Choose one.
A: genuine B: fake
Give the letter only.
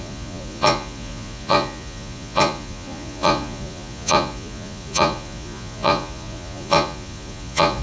B